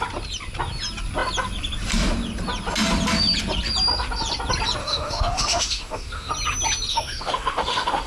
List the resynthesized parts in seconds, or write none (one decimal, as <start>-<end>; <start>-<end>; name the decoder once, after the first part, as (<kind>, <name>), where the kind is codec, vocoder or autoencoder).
4.8-6.3 (autoencoder, DAC-VAE); 6.9-8.1